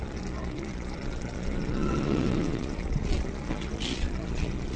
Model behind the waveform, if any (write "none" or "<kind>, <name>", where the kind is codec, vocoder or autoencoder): vocoder, Vocos